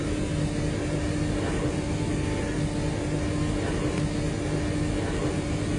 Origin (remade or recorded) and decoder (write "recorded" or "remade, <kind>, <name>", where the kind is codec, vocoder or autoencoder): recorded